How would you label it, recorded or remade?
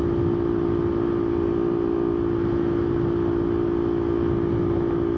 recorded